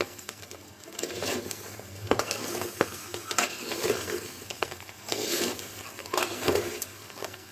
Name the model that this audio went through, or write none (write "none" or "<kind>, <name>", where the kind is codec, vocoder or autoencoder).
codec, SNAC